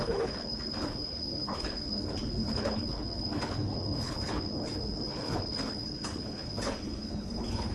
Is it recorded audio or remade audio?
remade